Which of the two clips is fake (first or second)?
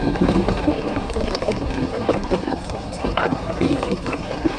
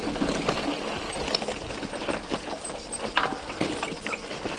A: first